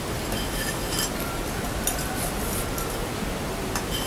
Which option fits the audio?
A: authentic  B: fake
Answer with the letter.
A